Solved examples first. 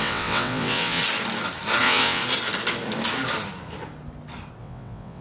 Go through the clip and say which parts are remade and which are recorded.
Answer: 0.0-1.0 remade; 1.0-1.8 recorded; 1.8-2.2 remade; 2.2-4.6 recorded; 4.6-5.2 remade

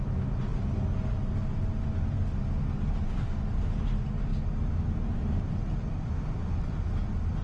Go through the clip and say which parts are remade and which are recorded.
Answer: 0.0-7.4 recorded

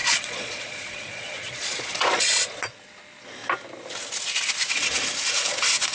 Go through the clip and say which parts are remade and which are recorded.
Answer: 0.0-2.7 remade; 2.7-5.9 recorded

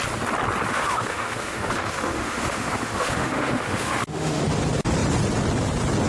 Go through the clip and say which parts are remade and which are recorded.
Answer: 0.0-0.7 recorded; 0.7-4.4 remade; 4.4-6.1 recorded

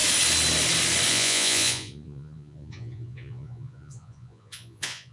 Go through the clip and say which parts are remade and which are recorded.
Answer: 0.0-1.1 recorded; 1.1-5.1 remade

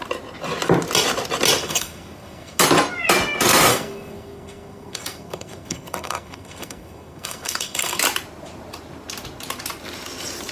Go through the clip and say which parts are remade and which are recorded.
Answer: 0.0-1.6 recorded; 1.6-2.6 remade; 2.6-3.7 recorded; 3.7-8.0 remade; 8.0-10.5 recorded

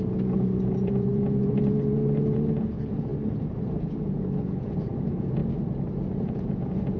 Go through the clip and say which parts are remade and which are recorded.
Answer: 0.0-3.1 remade; 3.1-3.7 recorded; 3.7-5.4 remade; 5.4-6.2 recorded; 6.2-7.0 remade

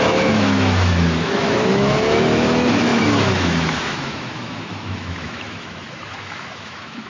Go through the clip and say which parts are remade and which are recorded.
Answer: 0.0-7.1 remade